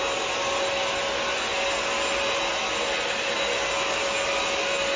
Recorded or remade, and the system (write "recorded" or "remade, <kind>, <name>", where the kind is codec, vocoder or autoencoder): recorded